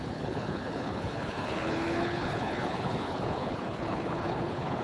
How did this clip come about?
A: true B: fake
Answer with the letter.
B